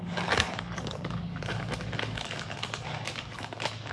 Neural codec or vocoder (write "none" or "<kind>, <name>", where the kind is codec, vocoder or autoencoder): codec, DAC